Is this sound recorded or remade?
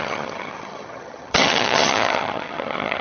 remade